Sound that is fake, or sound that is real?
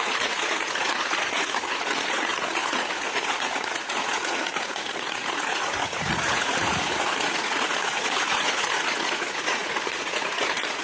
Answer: fake